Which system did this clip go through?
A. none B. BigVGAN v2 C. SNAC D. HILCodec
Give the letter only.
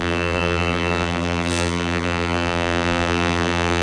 B